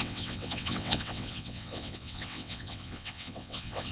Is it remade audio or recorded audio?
remade